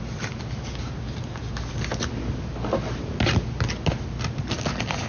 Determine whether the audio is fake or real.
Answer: real